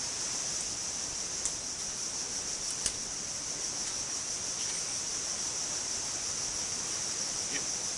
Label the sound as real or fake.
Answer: real